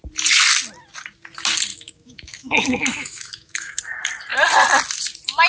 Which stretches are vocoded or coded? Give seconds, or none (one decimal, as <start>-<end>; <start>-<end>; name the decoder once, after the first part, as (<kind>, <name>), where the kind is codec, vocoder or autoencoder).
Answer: 1.7-3.8 (autoencoder, DAC-VAE)